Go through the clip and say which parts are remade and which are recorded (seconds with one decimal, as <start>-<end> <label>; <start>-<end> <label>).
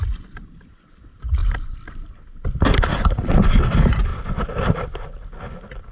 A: 0.0-1.4 recorded; 1.4-3.3 remade; 3.3-5.9 recorded